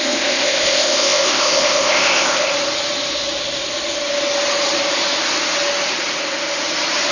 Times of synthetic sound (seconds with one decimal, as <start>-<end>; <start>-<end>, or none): 0.0-2.5